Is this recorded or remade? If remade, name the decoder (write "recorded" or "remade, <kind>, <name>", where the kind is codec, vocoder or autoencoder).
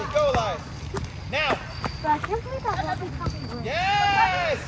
recorded